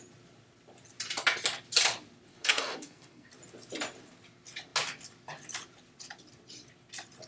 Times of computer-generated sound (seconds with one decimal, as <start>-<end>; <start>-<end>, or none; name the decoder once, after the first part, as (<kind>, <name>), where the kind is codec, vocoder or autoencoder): 2.3-3.3 (codec, SNAC)